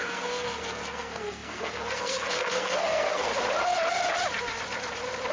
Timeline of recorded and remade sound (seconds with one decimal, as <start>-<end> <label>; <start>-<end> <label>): 0.0-3.3 remade; 3.3-5.3 recorded